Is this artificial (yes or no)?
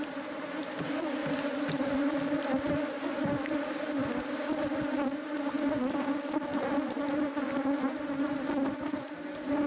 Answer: no